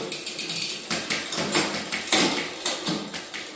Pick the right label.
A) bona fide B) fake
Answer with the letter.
A